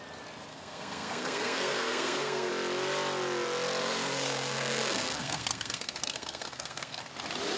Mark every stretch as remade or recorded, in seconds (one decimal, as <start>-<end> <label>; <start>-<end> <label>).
0.0-0.5 recorded; 0.5-2.5 remade; 2.5-3.8 recorded; 3.8-7.0 remade; 7.0-7.6 recorded